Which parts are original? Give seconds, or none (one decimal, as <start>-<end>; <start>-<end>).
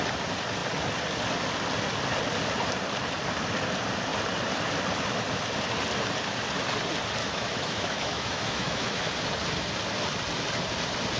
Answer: 0.0-7.2; 9.1-11.2